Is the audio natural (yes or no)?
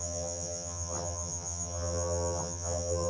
no